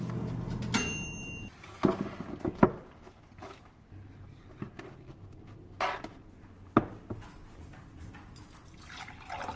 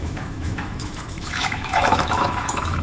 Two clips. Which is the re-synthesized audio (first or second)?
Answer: second